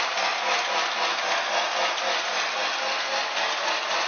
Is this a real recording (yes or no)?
yes